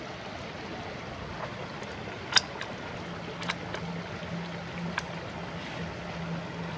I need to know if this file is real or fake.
real